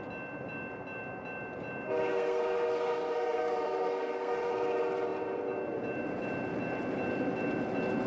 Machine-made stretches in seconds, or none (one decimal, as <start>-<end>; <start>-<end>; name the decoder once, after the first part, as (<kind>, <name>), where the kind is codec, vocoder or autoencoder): 2.1-4.5 (codec, SNAC)